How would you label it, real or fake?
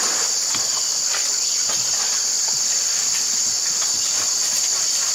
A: real